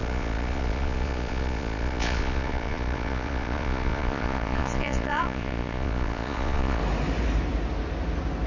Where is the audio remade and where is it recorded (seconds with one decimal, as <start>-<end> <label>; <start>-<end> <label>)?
0.0-6.8 remade; 6.8-8.5 recorded

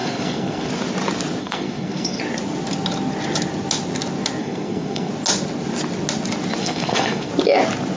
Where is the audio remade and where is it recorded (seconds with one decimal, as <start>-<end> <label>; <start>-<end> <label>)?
0.0-0.7 remade; 0.7-1.4 recorded; 1.4-2.2 remade; 2.2-4.4 recorded; 4.4-5.1 remade; 5.1-6.6 recorded; 6.6-7.3 remade; 7.3-8.0 recorded

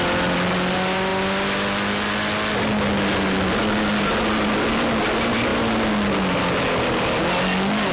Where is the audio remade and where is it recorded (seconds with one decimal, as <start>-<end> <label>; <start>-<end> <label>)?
0.0-7.9 recorded

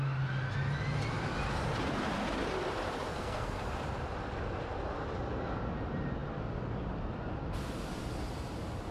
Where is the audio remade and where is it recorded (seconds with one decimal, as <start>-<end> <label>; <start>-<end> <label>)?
0.0-3.1 recorded; 3.1-3.6 remade; 3.6-8.9 recorded

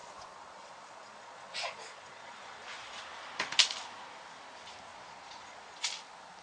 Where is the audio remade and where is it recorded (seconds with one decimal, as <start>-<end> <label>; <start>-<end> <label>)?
0.0-3.0 remade; 3.0-4.9 recorded; 4.9-5.9 remade; 5.9-6.4 recorded